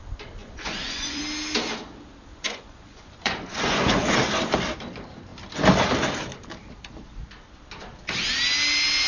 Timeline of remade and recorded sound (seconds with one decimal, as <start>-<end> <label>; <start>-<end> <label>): 0.0-0.4 recorded; 0.4-1.2 remade; 1.2-2.3 recorded; 2.3-4.1 remade; 4.1-9.1 recorded